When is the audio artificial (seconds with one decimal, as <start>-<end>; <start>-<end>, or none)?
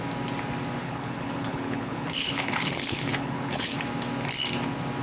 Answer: 0.8-3.8